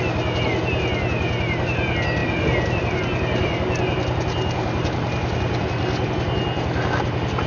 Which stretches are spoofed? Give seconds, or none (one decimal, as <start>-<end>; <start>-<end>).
none

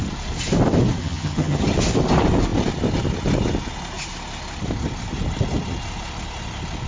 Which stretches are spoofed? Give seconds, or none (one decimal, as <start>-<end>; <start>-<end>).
1.0-1.6

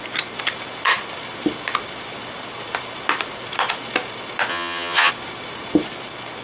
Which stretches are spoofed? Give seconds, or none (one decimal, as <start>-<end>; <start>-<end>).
4.5-5.1

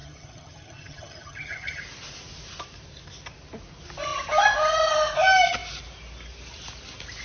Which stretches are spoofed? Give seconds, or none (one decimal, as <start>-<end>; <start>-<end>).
0.0-1.8

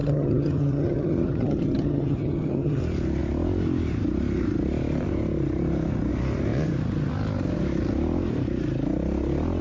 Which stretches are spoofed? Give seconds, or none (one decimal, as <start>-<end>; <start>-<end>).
0.0-2.8

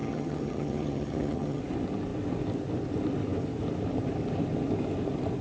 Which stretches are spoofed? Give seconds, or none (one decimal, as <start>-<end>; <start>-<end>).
0.0-1.6